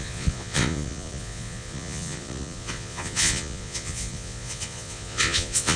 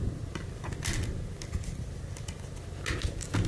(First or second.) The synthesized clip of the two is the first